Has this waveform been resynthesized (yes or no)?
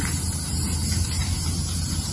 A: yes